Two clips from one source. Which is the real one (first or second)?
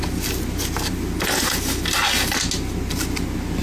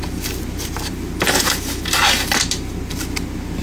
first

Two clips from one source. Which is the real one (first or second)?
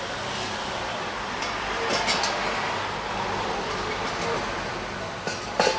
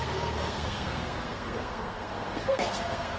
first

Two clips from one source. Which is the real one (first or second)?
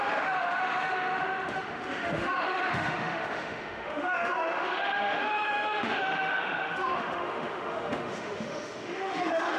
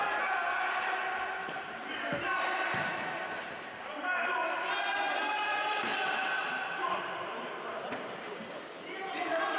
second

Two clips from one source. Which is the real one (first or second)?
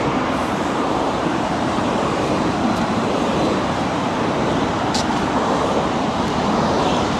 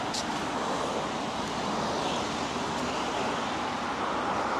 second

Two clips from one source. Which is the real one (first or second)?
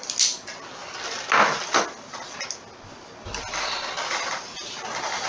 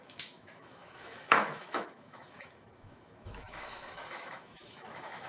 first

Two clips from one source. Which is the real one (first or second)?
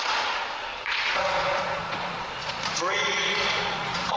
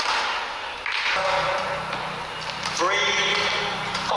second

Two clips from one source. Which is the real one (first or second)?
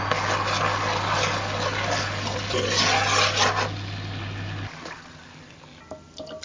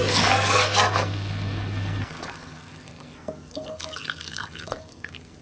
first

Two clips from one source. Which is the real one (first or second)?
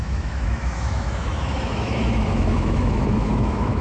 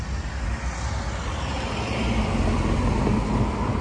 second